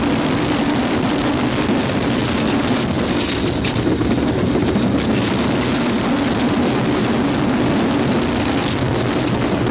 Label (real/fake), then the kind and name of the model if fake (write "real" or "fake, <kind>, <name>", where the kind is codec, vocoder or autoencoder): real